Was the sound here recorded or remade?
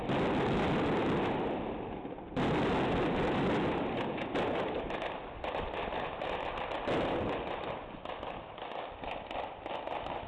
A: recorded